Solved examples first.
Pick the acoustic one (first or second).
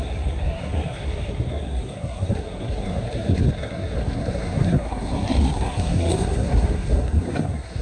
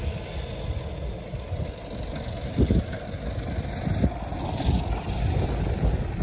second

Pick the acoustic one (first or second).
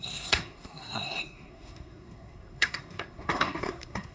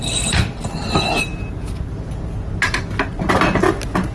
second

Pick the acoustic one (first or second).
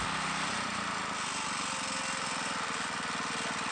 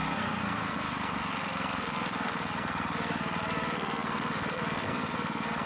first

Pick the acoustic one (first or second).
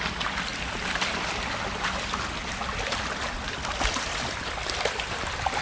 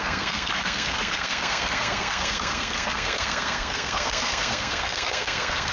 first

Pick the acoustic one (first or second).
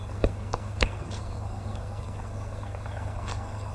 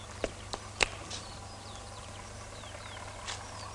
second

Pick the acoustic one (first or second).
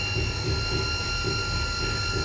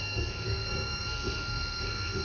first